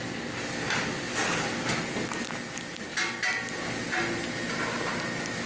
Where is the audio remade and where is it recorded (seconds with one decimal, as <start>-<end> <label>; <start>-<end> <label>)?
0.0-5.5 recorded